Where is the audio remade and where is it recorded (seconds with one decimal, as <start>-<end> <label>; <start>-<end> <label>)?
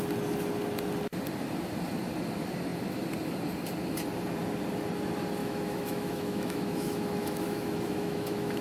0.0-5.4 recorded; 5.4-8.6 remade